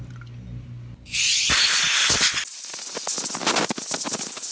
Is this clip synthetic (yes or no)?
no